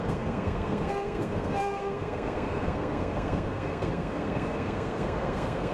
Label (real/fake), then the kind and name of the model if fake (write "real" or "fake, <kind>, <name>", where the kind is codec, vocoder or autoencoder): fake, codec, SNAC